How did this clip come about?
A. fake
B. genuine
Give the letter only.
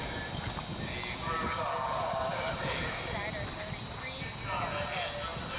B